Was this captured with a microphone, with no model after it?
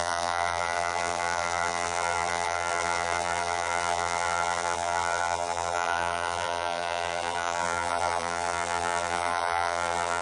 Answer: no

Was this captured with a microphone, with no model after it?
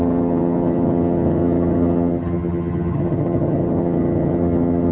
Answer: no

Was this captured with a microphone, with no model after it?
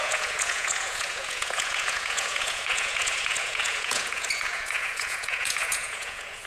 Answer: no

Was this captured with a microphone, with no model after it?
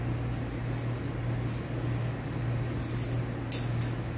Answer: yes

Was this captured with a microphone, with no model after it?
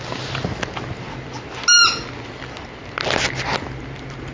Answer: yes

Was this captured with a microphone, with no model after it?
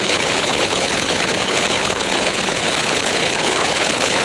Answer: no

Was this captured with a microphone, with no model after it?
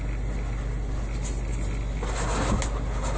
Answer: yes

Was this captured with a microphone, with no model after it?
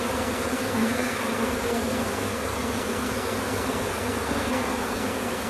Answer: no